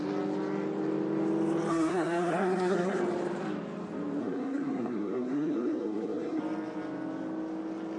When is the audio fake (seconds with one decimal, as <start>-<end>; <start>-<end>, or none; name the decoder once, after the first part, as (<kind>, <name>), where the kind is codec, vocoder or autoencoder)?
1.7-3.0 (codec, SNAC); 4.2-6.4